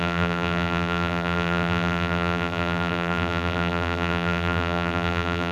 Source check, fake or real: fake